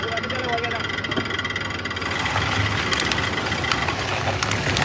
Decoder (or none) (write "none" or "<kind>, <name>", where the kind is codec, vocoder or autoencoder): none